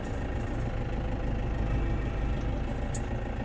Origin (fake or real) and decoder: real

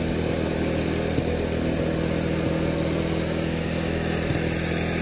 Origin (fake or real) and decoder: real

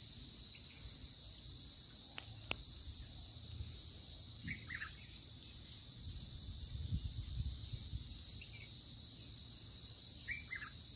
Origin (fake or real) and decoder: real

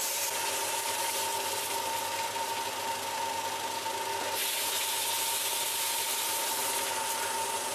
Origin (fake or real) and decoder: real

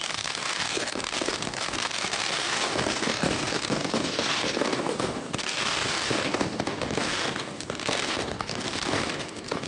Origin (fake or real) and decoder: fake, codec, DAC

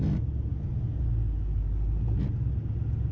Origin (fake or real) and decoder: real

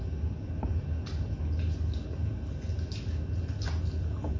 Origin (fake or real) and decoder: real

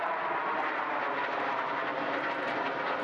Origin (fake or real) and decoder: real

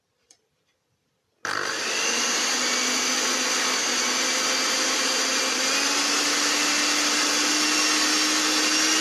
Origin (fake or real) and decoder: real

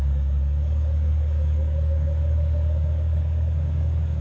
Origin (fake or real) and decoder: fake, codec, DAC